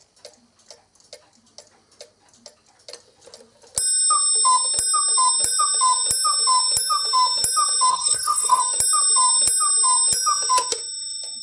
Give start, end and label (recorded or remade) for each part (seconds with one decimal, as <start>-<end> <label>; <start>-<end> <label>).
0.0-7.9 recorded; 7.9-8.6 remade; 8.6-11.4 recorded